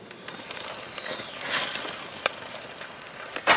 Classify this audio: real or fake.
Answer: real